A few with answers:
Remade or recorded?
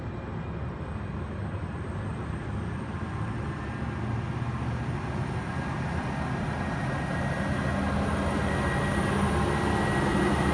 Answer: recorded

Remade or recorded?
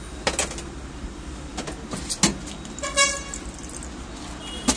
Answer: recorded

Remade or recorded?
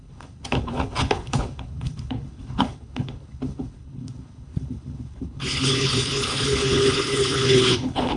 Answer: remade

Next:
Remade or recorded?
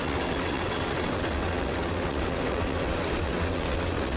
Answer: remade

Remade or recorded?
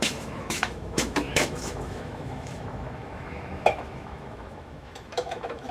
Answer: remade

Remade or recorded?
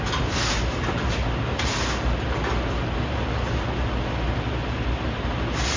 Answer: recorded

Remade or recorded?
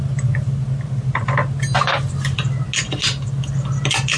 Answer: recorded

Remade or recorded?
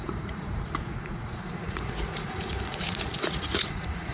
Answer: remade